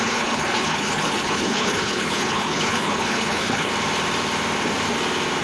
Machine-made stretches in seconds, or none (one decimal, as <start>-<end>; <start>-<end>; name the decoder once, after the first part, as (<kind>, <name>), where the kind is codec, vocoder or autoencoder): 0.0-3.7 (codec, HILCodec)